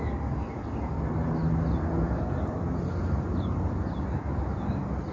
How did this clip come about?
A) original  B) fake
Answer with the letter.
A